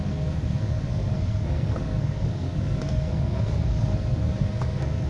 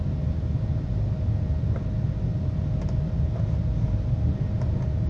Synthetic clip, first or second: first